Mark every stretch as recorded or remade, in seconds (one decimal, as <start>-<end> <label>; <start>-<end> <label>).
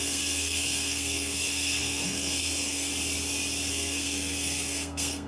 0.0-2.9 remade; 2.9-3.7 recorded; 3.7-5.3 remade